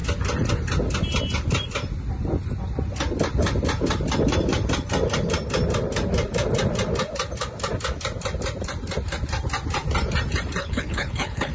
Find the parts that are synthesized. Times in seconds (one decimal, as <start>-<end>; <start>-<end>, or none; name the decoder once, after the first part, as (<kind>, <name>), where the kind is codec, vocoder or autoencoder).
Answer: 10.6-11.5 (codec, HILCodec)